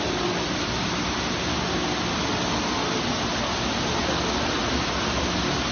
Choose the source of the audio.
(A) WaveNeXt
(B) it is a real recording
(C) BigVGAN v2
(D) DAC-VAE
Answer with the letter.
B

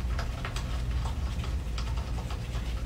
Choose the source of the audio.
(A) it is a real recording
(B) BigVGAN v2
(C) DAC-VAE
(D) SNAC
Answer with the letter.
A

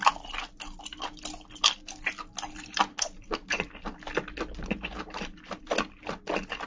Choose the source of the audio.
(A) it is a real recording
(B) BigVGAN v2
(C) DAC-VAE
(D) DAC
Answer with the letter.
A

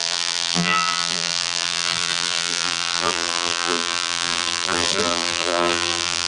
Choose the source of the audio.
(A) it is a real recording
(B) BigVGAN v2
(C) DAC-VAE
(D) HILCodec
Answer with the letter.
B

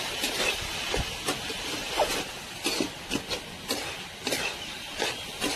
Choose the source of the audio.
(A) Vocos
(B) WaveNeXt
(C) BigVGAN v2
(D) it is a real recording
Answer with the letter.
D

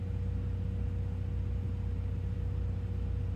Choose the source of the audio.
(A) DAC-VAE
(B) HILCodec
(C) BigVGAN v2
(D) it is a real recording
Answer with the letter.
D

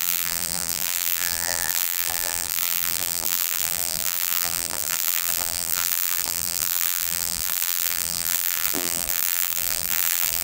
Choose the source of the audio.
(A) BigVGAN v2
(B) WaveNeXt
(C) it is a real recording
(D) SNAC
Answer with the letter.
A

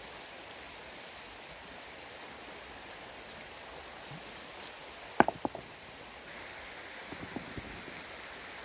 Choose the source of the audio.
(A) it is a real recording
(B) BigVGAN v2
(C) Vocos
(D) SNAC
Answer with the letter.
A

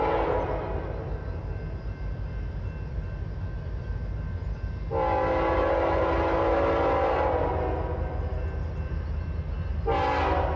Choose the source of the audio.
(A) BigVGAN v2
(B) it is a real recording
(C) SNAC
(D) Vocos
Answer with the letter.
B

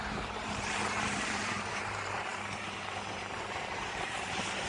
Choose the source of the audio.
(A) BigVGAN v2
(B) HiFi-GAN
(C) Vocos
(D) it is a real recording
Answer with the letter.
A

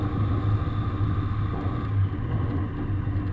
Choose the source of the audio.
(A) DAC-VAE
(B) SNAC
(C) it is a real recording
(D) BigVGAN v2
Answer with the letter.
C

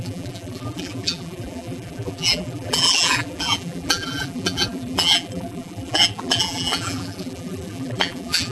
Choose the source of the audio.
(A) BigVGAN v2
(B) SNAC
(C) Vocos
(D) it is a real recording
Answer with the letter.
A